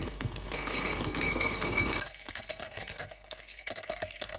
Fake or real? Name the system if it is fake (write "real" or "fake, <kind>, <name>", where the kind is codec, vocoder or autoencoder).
fake, codec, SNAC